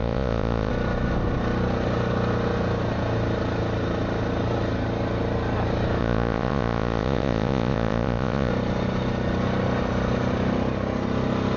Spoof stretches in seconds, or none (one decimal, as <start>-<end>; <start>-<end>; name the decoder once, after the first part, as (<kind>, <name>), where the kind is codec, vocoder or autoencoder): 0.0-0.7 (vocoder, Vocos); 6.0-8.5